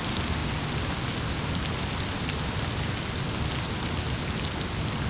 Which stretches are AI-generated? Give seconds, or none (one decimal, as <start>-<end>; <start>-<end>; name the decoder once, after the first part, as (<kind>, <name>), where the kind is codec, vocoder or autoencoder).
none